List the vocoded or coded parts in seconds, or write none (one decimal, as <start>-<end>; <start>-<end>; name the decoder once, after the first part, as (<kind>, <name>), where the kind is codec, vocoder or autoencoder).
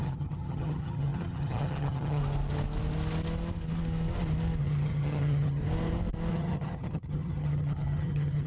0.0-2.2 (vocoder, HiFi-GAN); 4.6-5.6; 6.3-8.5